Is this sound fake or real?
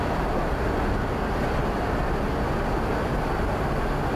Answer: real